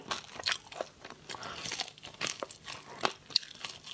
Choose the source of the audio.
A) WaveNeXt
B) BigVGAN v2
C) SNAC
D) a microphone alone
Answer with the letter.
D